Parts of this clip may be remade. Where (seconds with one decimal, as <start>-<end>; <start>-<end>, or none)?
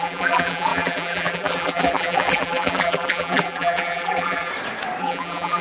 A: 0.0-4.5; 5.0-5.6